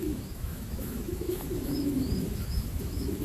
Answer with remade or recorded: remade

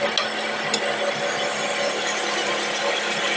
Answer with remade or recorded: recorded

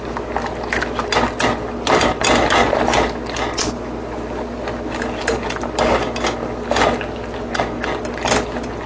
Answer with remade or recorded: recorded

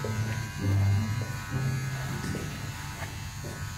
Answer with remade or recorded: recorded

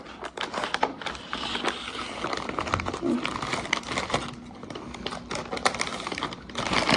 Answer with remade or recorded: recorded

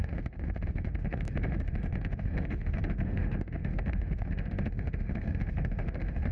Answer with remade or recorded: remade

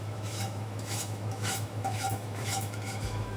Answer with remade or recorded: remade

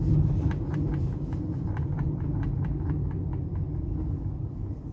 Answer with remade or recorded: recorded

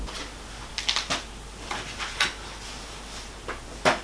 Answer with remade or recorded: recorded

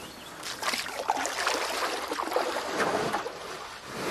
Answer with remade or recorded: recorded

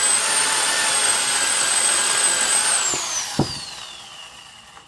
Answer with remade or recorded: recorded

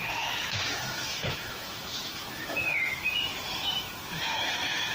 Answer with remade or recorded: remade